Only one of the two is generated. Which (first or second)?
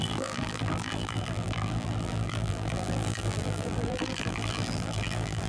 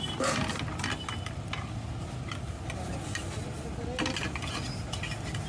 first